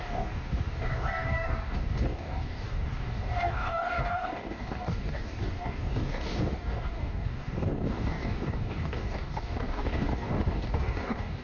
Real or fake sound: fake